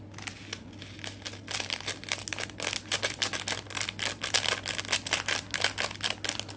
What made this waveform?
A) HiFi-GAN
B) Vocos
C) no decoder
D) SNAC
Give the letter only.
C